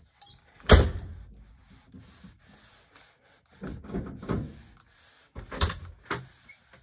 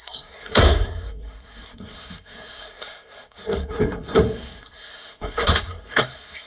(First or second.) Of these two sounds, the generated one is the second